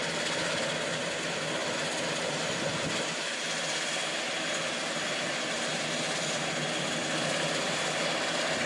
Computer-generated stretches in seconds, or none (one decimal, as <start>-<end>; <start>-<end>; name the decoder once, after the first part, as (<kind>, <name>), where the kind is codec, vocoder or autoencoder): none